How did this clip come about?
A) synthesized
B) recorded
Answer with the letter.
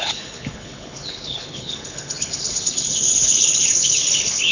A